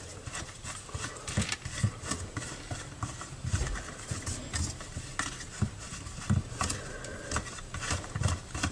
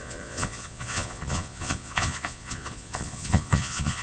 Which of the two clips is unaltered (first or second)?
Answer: first